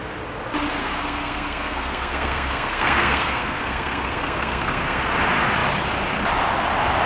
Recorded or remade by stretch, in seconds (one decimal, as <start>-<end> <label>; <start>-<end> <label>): 0.0-0.8 recorded; 0.8-5.1 remade; 5.1-7.1 recorded